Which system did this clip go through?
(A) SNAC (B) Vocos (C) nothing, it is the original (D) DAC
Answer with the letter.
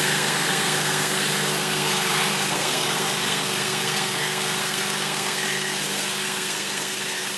A